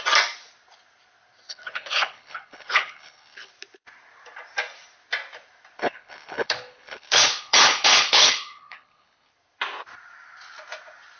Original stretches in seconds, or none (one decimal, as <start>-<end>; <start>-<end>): 0.0-1.5; 3.5-5.8; 9.3-11.2